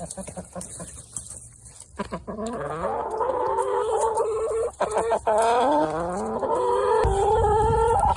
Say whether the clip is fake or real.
real